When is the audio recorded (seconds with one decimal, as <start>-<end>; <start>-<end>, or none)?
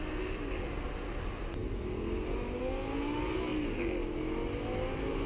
0.0-5.3